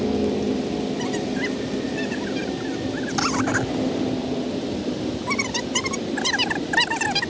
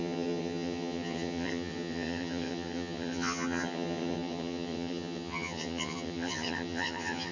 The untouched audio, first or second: first